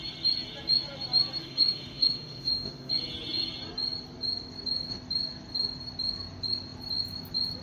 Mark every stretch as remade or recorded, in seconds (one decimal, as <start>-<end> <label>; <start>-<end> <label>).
0.0-1.4 recorded; 1.4-2.9 remade; 2.9-7.6 recorded